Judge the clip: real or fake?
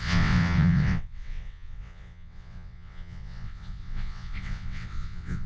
fake